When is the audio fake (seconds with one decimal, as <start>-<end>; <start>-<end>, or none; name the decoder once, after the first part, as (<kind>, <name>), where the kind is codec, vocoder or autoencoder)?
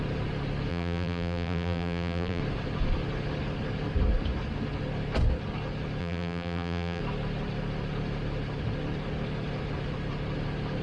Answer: 0.7-2.4 (vocoder, BigVGAN v2); 6.0-7.0